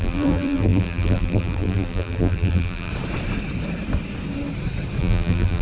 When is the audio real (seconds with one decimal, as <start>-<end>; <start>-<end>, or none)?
2.9-5.0